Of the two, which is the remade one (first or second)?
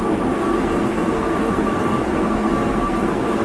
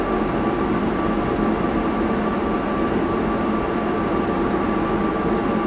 first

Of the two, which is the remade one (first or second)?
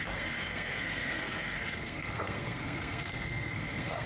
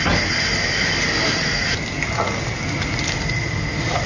first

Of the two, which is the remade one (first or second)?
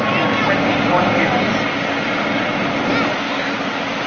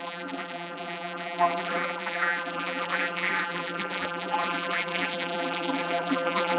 second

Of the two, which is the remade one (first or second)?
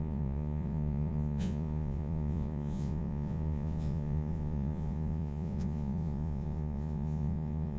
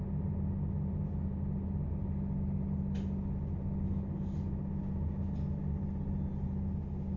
first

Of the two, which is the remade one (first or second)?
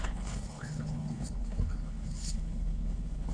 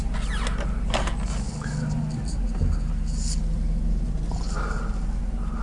first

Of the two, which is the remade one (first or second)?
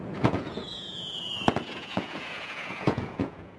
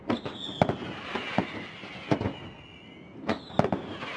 first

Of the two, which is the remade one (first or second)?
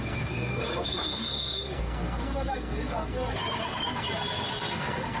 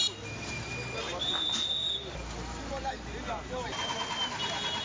first